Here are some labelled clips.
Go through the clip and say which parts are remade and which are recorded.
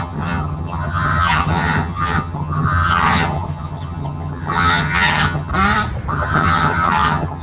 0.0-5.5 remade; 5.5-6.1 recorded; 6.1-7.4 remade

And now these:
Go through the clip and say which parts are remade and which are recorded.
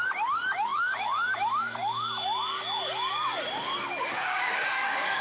0.0-5.2 remade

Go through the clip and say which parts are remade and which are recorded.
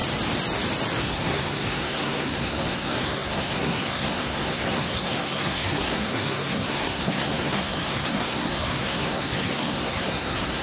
0.0-1.0 recorded; 1.0-10.6 remade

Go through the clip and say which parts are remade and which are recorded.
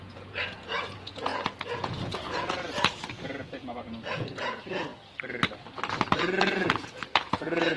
0.0-4.9 remade; 4.9-6.2 recorded; 6.2-7.8 remade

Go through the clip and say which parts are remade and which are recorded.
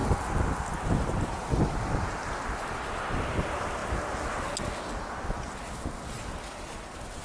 0.0-7.2 recorded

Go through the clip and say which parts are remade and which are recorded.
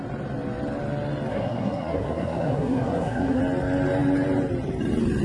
0.0-1.3 recorded; 1.3-3.4 remade; 3.4-5.2 recorded